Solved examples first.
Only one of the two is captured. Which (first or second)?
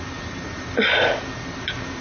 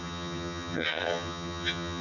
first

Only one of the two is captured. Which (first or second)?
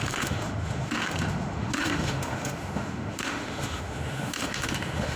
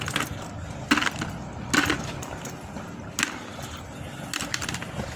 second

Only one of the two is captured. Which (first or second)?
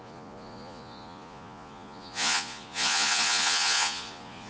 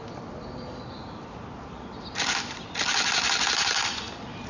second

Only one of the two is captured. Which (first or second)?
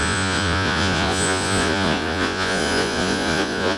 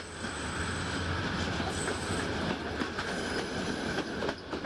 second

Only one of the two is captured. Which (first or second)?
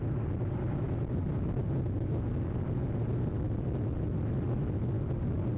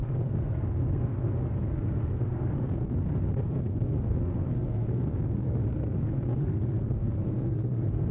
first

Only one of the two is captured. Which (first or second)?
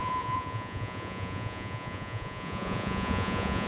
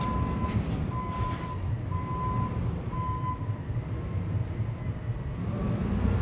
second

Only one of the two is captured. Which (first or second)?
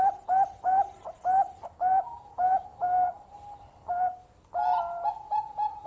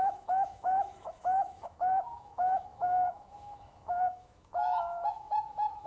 first